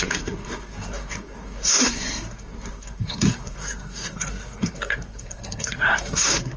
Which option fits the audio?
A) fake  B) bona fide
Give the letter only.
A